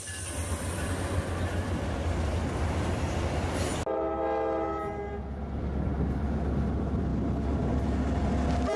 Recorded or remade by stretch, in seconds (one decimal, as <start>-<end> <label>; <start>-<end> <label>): 0.0-8.8 recorded